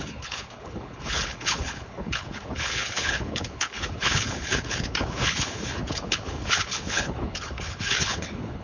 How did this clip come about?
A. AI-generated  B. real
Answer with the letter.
A